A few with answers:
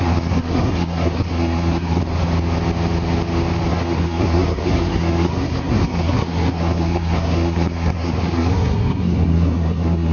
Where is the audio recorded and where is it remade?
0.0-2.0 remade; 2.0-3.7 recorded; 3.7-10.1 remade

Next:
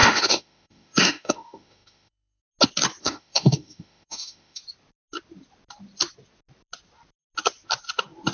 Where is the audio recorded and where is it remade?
0.0-2.4 remade; 2.4-3.0 recorded; 3.0-4.6 remade; 4.6-8.3 recorded